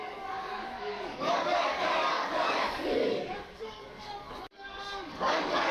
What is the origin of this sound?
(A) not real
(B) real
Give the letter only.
A